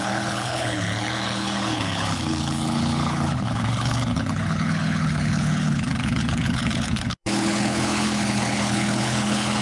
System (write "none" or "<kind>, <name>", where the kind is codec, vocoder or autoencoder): codec, HILCodec